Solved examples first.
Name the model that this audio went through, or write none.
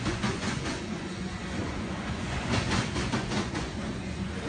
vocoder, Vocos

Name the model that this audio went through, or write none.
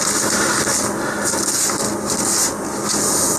none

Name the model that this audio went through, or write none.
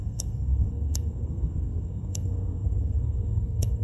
codec, SNAC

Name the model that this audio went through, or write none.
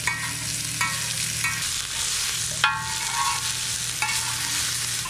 none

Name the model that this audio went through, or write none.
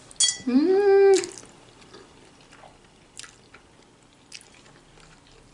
none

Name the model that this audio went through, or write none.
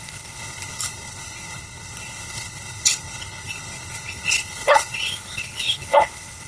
codec, HILCodec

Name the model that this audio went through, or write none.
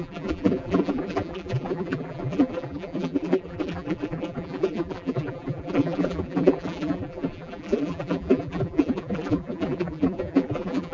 vocoder, BigVGAN v2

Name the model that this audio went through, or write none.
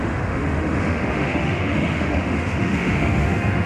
autoencoder, DAC-VAE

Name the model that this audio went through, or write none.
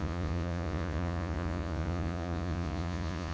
vocoder, Vocos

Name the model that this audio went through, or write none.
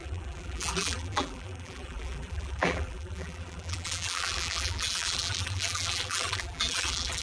vocoder, BigVGAN v2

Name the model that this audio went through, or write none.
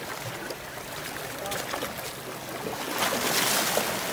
none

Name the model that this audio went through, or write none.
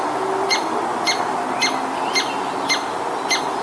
none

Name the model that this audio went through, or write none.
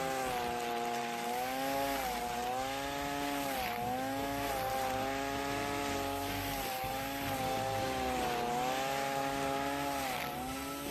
none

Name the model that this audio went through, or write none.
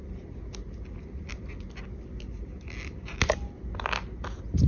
none